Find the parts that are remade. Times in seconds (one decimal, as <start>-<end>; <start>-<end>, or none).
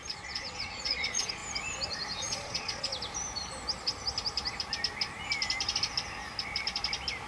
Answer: 0.0-1.4; 2.2-2.9